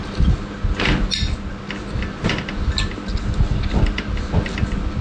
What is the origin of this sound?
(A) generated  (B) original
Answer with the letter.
B